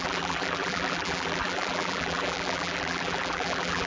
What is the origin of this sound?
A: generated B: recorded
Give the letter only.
A